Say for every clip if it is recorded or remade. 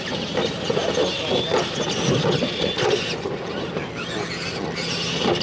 recorded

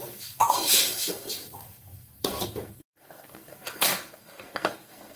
remade